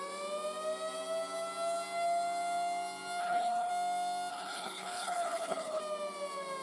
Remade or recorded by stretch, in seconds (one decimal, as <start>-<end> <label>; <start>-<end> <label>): 0.0-3.2 recorded; 3.2-3.7 remade; 3.7-4.3 recorded; 4.3-5.8 remade; 5.8-6.6 recorded